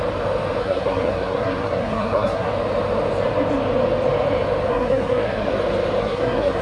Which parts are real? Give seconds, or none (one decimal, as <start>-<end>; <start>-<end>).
0.0-0.6; 2.5-4.7; 5.5-6.0